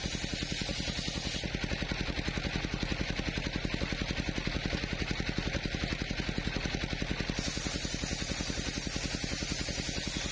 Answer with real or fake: real